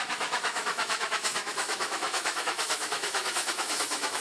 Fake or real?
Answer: fake